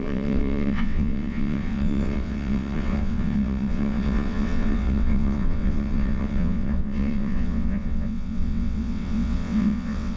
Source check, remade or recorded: remade